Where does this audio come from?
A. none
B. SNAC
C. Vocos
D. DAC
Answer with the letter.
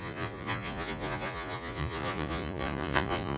C